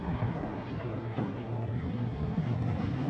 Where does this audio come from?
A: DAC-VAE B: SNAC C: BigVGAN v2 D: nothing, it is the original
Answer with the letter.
B